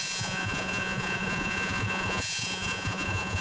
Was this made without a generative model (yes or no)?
no